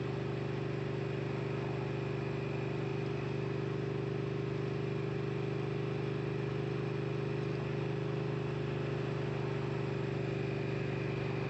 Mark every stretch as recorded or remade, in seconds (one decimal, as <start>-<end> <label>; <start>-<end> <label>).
0.0-11.5 recorded